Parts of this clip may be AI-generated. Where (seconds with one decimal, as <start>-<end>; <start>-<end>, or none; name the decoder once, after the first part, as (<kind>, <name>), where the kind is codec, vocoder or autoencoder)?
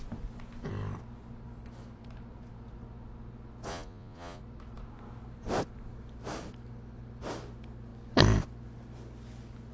3.7-4.4 (vocoder, Vocos)